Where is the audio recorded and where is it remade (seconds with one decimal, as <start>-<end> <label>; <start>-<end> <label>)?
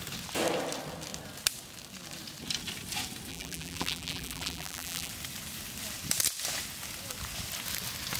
0.0-3.3 recorded; 3.3-5.1 remade; 5.1-8.2 recorded